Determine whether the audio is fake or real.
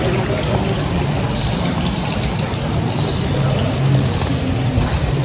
real